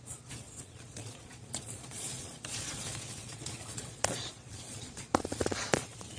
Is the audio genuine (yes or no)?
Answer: no